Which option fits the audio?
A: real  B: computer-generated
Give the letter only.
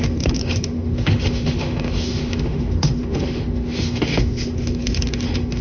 B